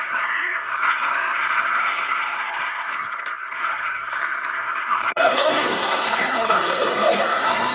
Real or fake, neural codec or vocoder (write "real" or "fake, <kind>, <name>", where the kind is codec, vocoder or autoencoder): fake, codec, SNAC